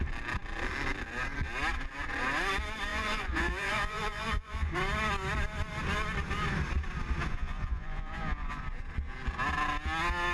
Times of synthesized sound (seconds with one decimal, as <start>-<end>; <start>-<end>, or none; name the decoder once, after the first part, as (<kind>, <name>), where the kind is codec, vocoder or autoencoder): 2.9-4.7 (vocoder, Vocos); 7.3-8.6